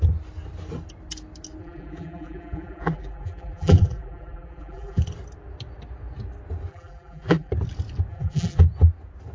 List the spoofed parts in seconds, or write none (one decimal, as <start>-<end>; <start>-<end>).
1.6-5.0; 6.7-7.5; 8.1-8.6